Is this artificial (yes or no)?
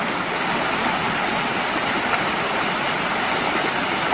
no